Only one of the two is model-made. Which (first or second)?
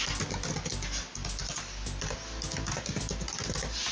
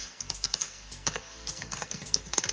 second